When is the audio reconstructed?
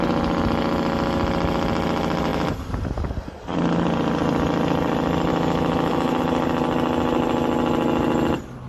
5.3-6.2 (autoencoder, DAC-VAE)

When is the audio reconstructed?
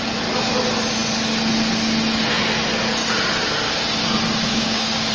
4.5-5.1 (codec, DAC)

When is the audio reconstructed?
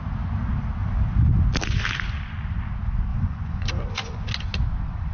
3.1-4.3 (vocoder, Vocos)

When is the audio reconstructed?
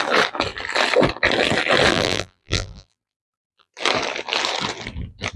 1.9-3.7 (vocoder, BigVGAN v2)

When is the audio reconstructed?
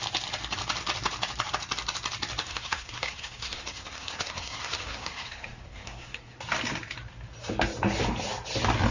2.4-6.4 (codec, SNAC)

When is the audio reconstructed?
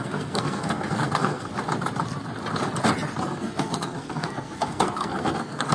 0.0-1.5 (codec, SNAC); 3.2-5.7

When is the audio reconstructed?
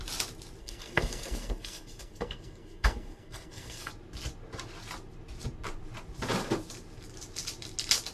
0.6-3.9 (codec, SNAC)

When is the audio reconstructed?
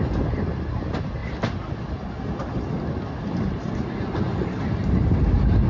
none